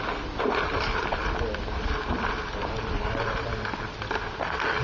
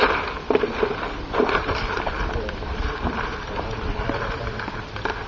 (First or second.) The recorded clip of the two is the first